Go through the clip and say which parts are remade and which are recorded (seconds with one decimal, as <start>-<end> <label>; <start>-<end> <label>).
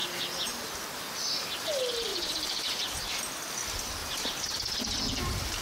0.0-2.1 recorded; 2.1-2.9 remade; 2.9-4.0 recorded; 4.0-5.6 remade